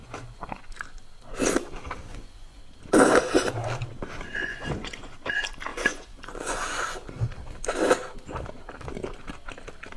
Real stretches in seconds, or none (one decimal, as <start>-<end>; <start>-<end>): 0.6-2.1; 2.6-4.4; 5.1-5.7; 7.2-10.0